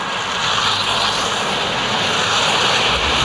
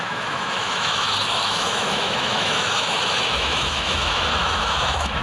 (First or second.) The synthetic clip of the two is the second